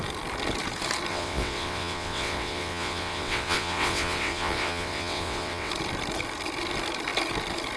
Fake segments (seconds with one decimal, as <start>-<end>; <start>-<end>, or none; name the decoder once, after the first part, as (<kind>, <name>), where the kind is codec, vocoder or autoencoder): 1.1-5.7 (vocoder, WaveNeXt)

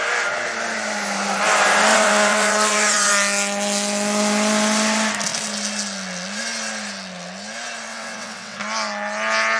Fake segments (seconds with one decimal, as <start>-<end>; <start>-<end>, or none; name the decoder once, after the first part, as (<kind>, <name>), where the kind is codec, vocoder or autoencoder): 1.9-3.1 (vocoder, WaveNeXt); 7.9-8.6